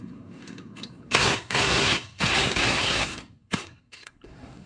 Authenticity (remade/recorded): remade